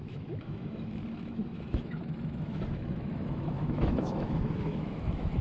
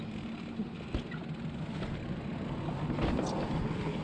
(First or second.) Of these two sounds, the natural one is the second